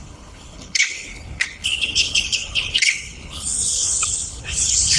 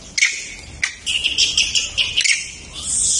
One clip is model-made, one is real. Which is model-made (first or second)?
first